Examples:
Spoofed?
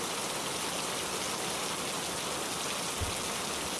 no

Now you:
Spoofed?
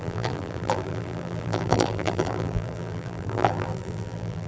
yes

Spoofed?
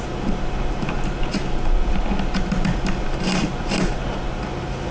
no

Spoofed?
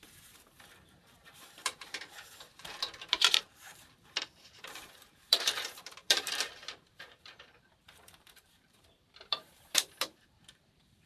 yes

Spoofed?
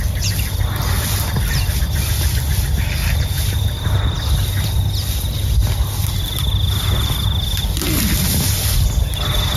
no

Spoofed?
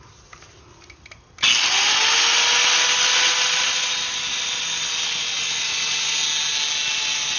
no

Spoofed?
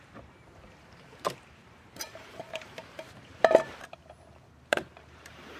yes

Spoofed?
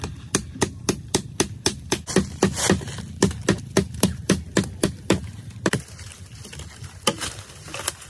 no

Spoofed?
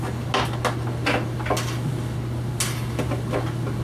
no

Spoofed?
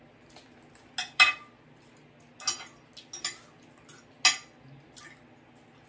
no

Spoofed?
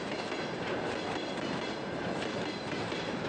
yes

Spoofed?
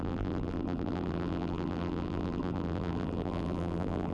yes